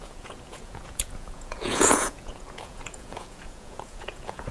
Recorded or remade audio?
remade